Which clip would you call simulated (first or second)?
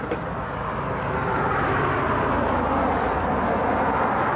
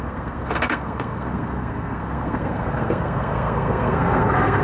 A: second